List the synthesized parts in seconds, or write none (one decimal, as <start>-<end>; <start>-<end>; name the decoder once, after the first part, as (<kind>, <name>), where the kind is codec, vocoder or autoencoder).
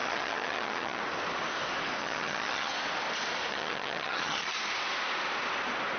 0.0-1.0 (vocoder, HiFi-GAN); 2.0-2.7; 3.5-4.4